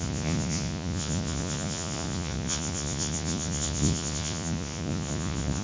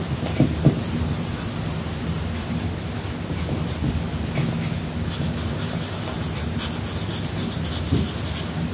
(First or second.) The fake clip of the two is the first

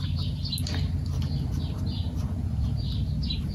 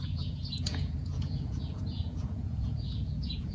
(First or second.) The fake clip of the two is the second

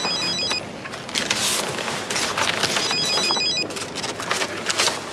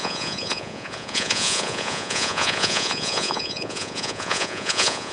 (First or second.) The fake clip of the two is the second